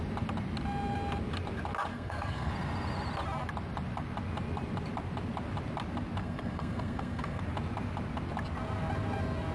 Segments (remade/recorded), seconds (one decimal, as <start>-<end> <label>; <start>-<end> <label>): 0.0-1.9 recorded; 1.9-2.5 remade; 2.5-6.2 recorded; 6.2-7.4 remade; 7.4-9.5 recorded